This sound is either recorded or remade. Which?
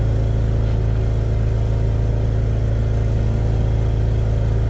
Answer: recorded